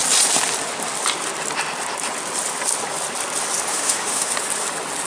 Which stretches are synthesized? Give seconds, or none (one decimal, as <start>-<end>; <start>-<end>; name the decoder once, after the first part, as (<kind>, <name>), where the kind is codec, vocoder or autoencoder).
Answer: 3.7-4.3 (autoencoder, DAC-VAE)

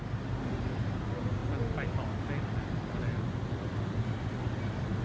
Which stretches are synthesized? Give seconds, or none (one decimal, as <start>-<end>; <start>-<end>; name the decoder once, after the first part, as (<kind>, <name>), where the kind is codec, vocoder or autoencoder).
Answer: none

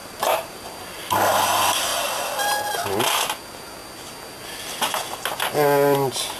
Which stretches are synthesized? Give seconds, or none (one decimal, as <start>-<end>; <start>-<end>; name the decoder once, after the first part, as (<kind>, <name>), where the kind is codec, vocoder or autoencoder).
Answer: 0.0-0.6 (vocoder, BigVGAN v2)

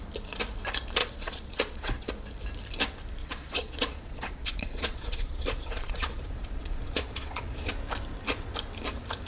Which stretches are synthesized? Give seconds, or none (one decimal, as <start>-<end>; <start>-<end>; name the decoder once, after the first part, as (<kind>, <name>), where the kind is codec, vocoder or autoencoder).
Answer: 1.0-2.1 (vocoder, Vocos); 3.2-7.7

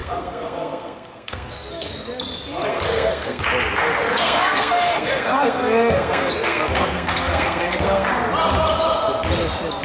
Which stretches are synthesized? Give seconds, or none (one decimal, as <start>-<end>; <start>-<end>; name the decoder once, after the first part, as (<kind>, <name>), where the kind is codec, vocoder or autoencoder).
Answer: 0.0-1.9 (codec, SNAC); 2.7-3.4; 4.1-8.1